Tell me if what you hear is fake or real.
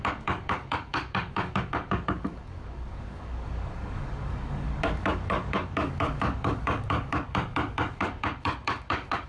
fake